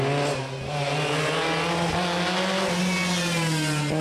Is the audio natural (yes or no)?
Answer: yes